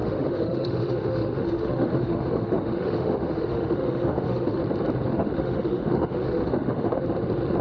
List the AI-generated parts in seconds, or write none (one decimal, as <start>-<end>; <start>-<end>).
0.0-4.6; 5.1-7.0